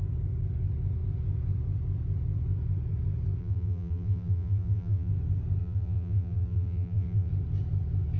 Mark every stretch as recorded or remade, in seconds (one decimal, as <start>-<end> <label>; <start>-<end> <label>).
0.0-3.4 recorded; 3.4-5.1 remade; 5.1-5.6 recorded; 5.6-7.3 remade; 7.3-8.2 recorded